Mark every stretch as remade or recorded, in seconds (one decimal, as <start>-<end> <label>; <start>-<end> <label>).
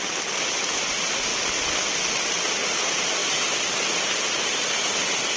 0.0-5.4 recorded